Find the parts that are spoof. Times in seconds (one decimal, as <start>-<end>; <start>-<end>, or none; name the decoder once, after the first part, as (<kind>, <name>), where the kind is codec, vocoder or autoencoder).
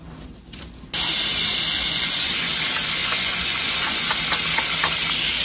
1.9-2.5 (vocoder, Vocos); 3.0-4.1